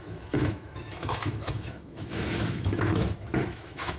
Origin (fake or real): fake